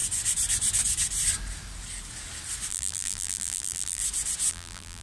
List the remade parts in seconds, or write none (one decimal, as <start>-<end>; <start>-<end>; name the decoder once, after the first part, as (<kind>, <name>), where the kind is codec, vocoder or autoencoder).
2.7-4.0 (vocoder, BigVGAN v2); 4.5-5.0